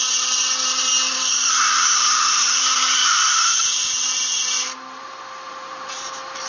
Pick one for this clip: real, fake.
fake